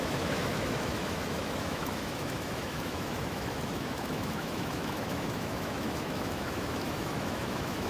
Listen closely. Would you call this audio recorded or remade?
remade